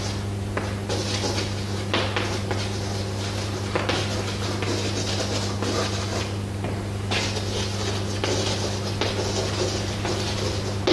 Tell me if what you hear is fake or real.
real